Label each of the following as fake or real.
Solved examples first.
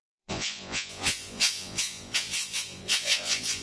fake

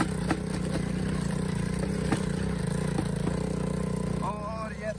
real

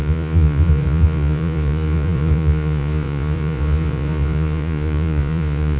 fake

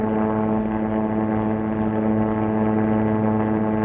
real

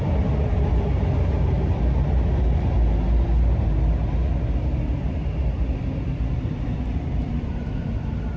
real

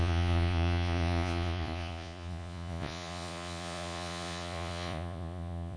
fake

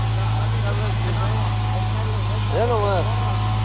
real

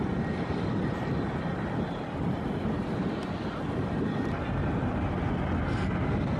real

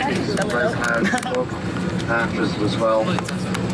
real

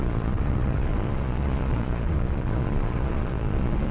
fake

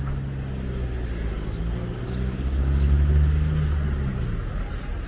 real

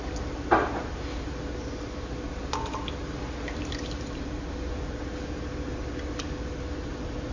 real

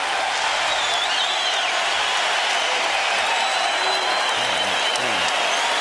real